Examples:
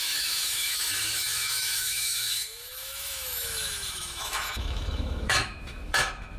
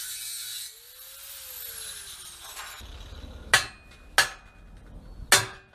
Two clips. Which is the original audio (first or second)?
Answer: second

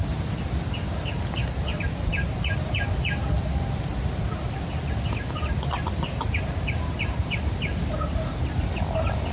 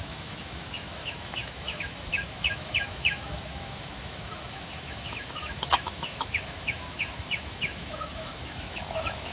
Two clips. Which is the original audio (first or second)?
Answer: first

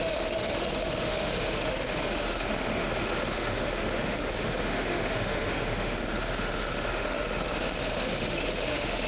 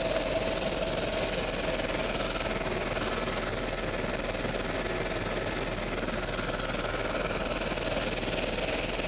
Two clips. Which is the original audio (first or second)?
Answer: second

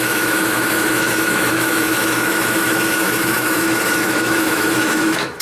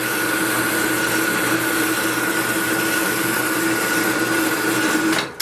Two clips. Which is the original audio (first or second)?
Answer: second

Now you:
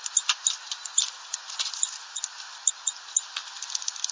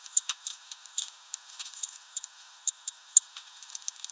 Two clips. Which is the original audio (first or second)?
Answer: first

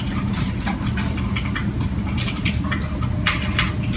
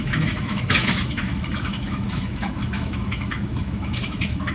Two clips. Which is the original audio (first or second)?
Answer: first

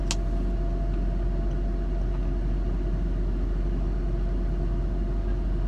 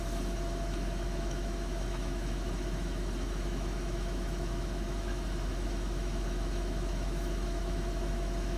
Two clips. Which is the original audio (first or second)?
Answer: first